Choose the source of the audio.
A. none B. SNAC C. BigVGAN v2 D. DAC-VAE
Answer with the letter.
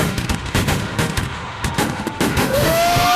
D